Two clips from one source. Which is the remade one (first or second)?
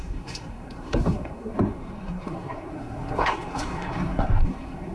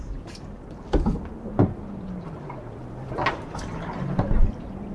first